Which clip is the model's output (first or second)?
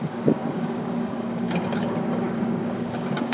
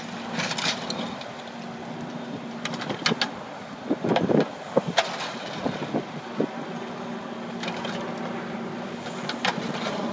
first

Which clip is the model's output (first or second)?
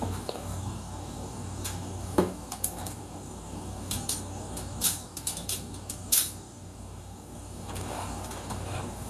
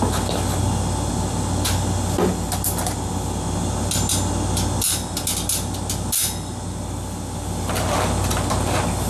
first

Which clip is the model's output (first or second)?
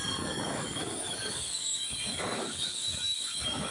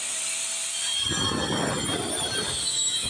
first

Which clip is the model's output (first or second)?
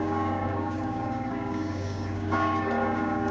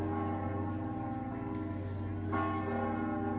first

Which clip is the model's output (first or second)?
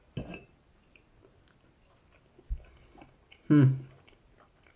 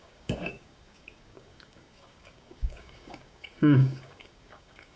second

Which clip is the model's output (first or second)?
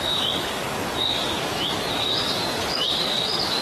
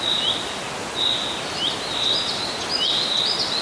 first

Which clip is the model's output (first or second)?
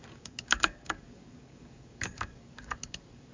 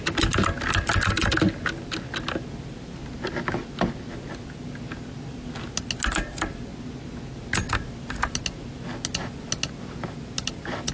first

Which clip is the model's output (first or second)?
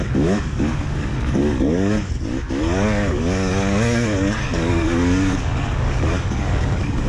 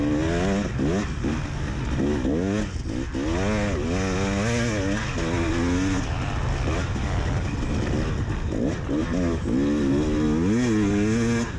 first